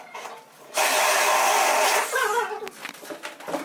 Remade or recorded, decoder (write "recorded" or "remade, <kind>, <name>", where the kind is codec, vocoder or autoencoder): recorded